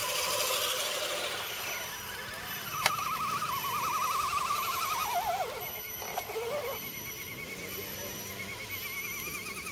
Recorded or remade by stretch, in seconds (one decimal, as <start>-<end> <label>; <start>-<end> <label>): 0.0-2.7 recorded; 2.7-3.9 remade; 3.9-5.0 recorded; 5.0-8.2 remade; 8.2-9.7 recorded